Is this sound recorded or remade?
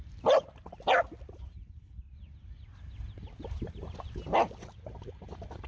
recorded